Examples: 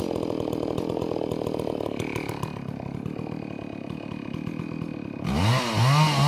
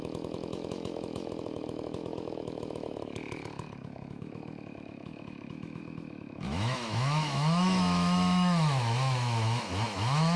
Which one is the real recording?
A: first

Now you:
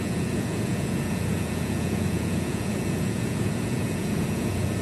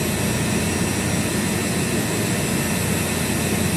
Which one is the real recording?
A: second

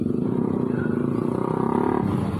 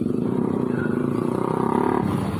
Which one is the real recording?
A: first